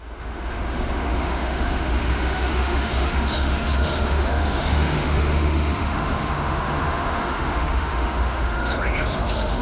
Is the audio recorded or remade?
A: remade